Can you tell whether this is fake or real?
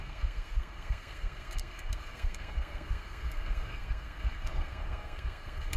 fake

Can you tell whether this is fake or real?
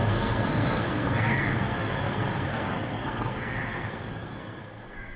fake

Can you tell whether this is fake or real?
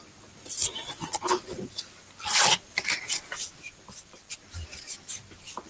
real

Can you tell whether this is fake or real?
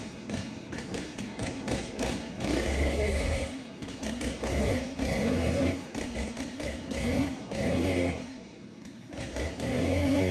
fake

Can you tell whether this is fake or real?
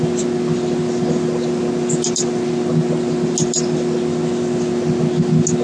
real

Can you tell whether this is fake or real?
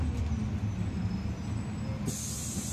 real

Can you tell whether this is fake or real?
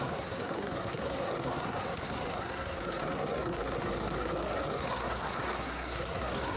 fake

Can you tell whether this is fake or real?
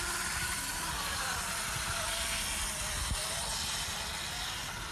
real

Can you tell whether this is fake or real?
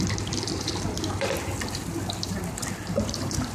fake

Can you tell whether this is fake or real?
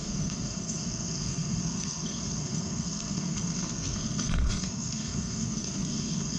fake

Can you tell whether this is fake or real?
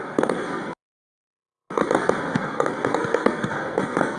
fake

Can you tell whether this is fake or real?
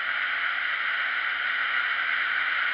real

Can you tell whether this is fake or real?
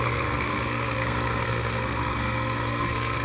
fake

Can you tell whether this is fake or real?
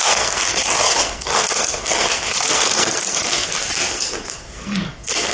fake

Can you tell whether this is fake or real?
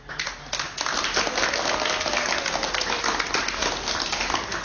real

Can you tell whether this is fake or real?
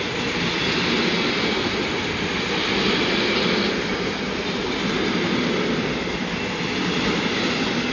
real